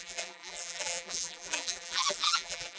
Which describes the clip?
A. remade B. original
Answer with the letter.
A